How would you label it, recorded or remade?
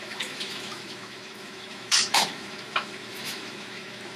remade